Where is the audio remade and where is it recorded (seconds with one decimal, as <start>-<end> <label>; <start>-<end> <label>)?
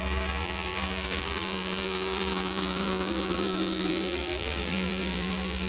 0.0-5.7 remade